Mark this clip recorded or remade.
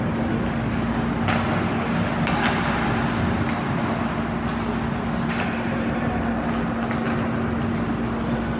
recorded